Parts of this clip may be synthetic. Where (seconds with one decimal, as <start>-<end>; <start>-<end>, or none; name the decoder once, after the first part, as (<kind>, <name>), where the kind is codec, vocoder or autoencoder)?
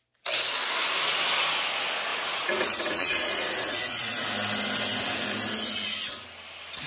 2.1-4.1 (vocoder, Vocos)